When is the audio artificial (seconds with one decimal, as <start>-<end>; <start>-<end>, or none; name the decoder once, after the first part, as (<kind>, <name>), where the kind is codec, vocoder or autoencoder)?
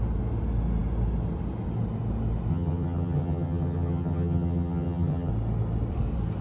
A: 2.5-5.3 (vocoder, HiFi-GAN)